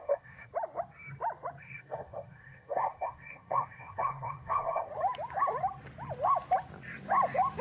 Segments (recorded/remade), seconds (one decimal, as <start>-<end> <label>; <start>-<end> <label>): 0.0-0.5 remade; 0.5-1.6 recorded; 1.6-4.9 remade; 4.9-7.6 recorded

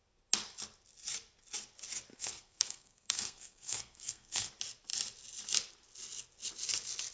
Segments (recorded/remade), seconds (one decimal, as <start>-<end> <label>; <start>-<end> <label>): 0.0-2.1 recorded; 2.1-4.5 remade; 4.5-7.1 recorded

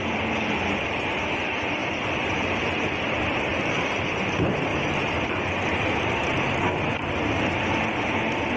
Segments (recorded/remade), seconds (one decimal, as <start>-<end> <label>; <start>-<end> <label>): 0.0-1.8 recorded; 1.8-2.6 remade; 2.6-3.5 recorded; 3.5-4.1 remade; 4.1-4.7 recorded; 4.7-5.4 remade; 5.4-8.6 recorded

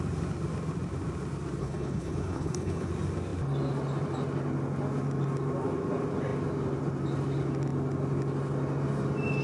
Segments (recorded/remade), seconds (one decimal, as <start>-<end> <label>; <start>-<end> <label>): 0.0-1.6 recorded; 1.6-2.9 remade; 2.9-9.4 recorded

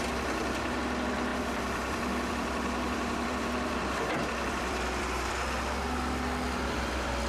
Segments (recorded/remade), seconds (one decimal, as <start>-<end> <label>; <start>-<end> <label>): 0.0-1.3 recorded; 1.3-5.3 remade; 5.3-7.3 recorded